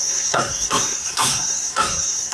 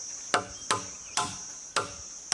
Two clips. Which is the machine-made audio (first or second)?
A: first